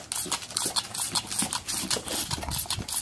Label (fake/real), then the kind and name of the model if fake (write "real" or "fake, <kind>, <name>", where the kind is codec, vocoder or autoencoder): real